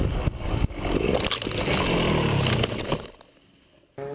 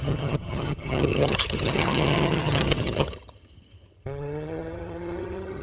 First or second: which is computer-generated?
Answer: second